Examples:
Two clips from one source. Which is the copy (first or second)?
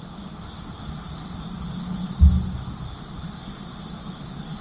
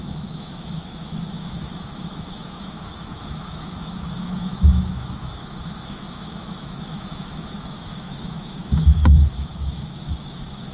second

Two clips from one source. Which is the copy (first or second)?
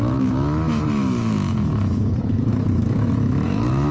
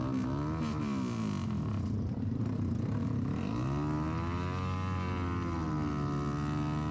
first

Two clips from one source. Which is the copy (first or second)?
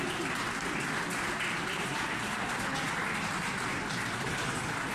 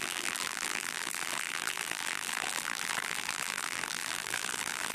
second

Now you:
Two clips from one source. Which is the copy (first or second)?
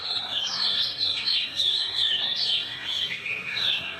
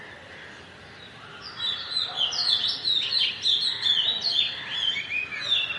first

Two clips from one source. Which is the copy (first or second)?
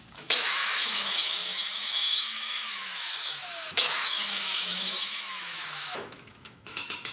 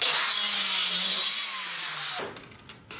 first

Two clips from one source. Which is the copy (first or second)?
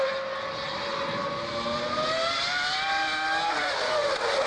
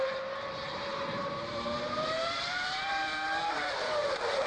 second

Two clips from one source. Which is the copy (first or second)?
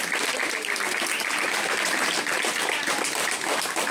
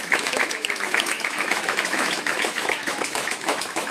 second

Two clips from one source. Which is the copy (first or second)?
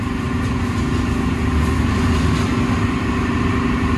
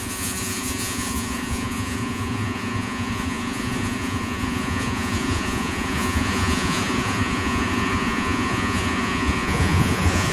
second